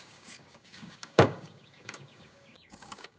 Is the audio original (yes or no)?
no